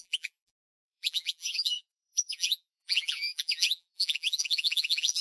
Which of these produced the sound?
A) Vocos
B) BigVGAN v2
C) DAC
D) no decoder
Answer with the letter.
B